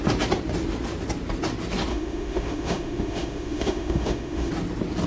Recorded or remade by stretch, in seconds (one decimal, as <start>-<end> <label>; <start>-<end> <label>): 0.0-1.9 recorded; 1.9-4.5 remade; 4.5-5.1 recorded